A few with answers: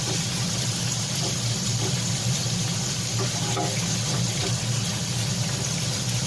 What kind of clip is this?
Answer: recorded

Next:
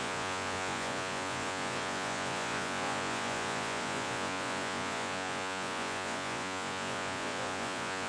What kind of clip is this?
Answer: remade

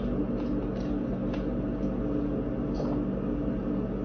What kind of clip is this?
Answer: recorded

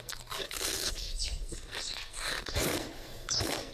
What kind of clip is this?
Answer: remade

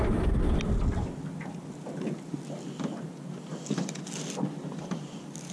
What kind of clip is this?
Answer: recorded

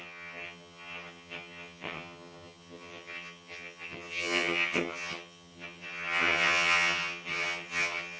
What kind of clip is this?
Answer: remade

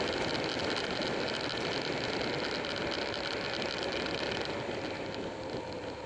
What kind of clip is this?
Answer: recorded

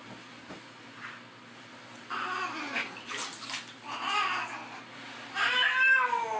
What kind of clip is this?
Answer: recorded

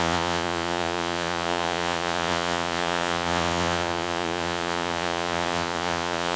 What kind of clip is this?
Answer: remade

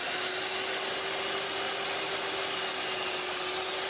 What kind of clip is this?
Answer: recorded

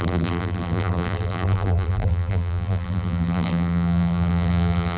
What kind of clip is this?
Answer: remade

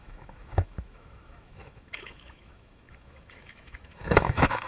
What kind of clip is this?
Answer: remade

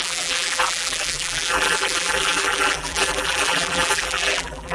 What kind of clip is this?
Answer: remade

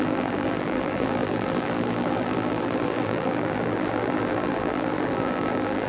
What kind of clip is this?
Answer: remade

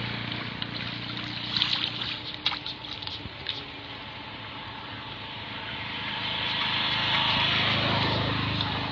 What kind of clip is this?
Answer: recorded